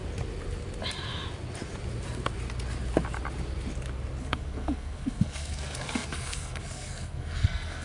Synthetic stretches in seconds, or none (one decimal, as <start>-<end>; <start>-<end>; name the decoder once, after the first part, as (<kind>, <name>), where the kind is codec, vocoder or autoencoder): 4.2-7.8 (codec, SNAC)